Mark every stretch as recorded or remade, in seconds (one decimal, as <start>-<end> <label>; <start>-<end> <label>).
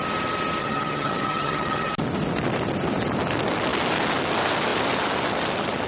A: 0.0-0.6 recorded; 0.6-1.9 remade; 1.9-5.9 recorded